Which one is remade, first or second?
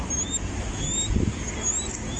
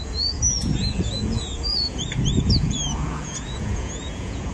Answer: second